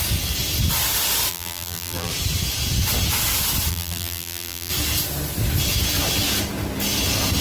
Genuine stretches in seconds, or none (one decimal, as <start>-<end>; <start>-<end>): 0.0-1.3; 2.1-3.7; 4.7-7.4